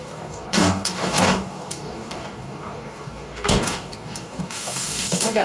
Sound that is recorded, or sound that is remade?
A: remade